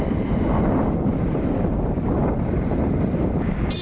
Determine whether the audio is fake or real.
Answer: real